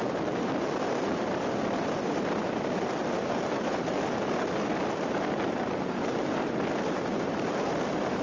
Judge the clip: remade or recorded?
recorded